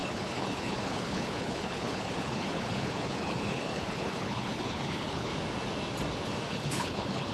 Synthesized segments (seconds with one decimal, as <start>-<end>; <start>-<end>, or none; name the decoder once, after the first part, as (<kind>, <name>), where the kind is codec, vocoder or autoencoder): 0.0-5.3 (codec, HILCodec); 6.5-7.3